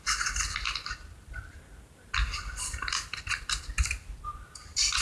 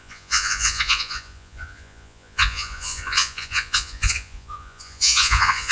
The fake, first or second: second